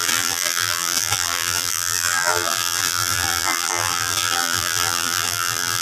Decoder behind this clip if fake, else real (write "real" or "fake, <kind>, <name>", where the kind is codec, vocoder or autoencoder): fake, vocoder, BigVGAN v2